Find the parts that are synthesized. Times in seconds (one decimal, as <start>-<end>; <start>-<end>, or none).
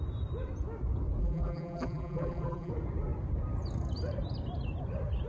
1.2-2.7